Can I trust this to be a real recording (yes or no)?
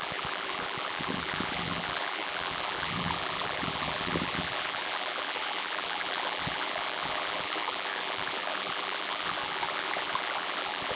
no